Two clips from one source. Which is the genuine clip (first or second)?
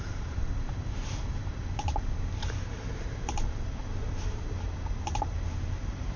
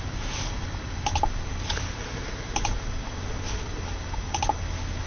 second